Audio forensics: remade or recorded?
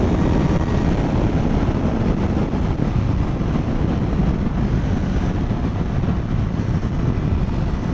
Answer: recorded